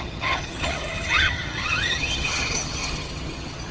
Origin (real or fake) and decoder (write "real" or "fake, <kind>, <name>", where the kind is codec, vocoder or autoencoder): fake, vocoder, HiFi-GAN